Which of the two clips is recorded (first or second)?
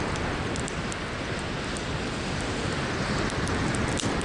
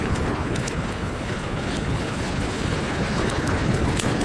first